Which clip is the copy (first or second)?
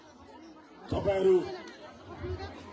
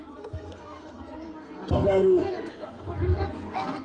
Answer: second